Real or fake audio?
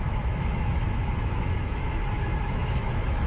fake